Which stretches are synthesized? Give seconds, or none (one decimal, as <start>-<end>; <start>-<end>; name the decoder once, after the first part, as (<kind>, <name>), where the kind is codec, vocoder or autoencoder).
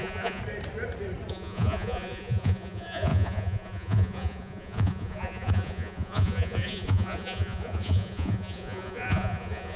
0.0-0.4 (vocoder, Vocos); 1.3-9.8